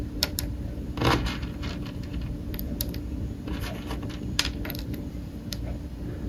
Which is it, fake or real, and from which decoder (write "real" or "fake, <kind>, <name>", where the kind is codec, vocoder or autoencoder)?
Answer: fake, vocoder, BigVGAN v2